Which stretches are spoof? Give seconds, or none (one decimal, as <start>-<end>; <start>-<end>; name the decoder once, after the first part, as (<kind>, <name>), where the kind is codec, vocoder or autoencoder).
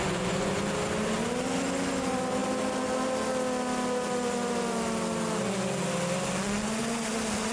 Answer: 0.0-0.5 (vocoder, Vocos)